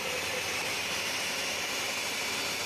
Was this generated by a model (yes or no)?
yes